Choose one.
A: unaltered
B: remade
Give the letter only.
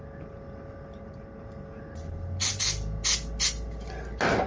A